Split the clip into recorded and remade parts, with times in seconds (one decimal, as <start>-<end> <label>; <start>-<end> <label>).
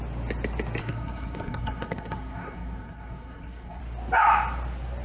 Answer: 0.0-0.8 recorded; 0.8-3.8 remade; 3.8-5.0 recorded